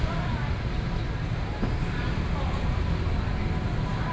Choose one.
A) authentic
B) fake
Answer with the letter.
A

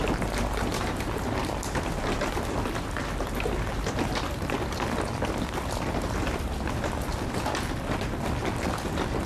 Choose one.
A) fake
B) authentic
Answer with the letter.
B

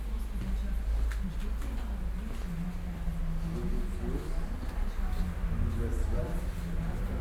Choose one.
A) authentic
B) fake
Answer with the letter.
A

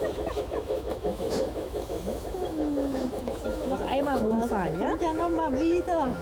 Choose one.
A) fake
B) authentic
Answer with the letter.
A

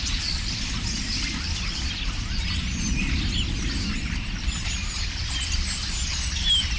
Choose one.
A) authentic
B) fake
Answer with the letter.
A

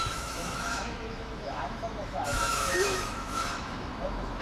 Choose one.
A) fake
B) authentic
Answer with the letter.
A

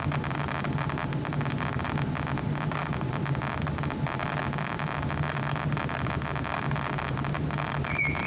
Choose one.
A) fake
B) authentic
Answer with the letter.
B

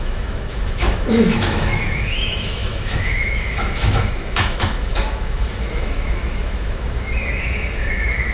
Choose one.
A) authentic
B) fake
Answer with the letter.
B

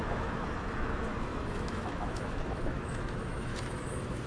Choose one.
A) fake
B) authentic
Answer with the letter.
A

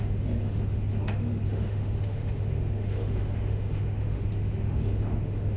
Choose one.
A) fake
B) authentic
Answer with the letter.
A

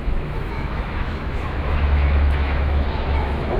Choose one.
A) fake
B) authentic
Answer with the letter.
A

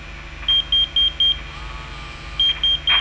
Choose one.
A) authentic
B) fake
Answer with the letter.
A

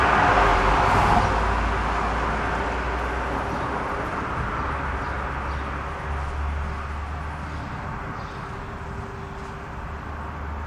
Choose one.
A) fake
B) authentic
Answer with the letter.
B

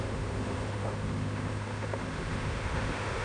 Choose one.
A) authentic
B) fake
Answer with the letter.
B